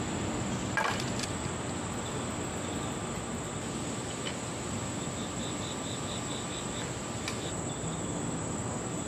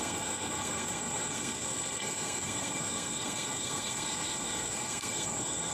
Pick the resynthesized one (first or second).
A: second